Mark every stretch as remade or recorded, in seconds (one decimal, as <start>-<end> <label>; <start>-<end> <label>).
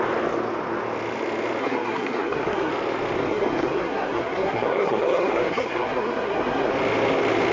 0.0-1.6 recorded; 1.6-2.7 remade; 2.7-3.2 recorded; 3.2-6.7 remade; 6.7-7.5 recorded